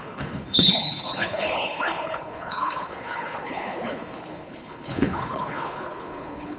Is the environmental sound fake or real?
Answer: fake